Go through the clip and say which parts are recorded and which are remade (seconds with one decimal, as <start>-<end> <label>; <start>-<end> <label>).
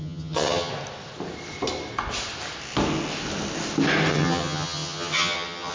0.0-0.7 remade; 0.7-4.1 recorded; 4.1-5.7 remade